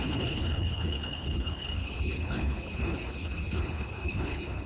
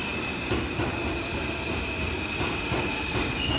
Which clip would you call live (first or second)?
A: second